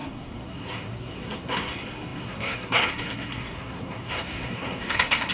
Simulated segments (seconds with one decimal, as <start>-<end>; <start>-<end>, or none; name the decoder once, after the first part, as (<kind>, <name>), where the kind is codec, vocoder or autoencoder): 0.0-5.3 (codec, SNAC)